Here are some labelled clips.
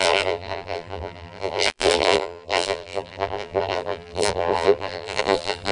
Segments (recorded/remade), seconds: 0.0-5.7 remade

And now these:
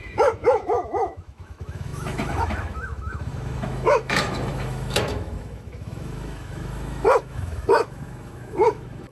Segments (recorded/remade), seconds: 0.0-9.1 remade